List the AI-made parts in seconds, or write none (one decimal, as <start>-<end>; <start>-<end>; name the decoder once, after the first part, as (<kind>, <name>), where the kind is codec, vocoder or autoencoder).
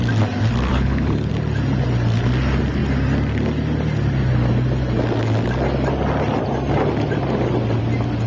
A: 0.7-1.3 (codec, HILCodec)